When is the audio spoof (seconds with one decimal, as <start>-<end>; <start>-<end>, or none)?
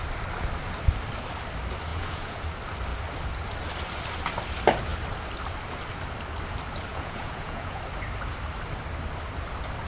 1.9-2.4; 6.9-7.8